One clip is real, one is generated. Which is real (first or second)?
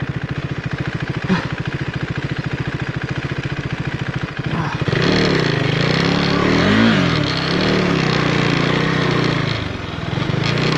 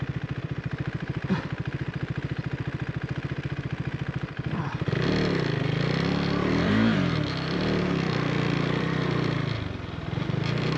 first